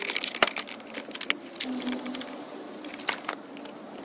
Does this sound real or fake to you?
real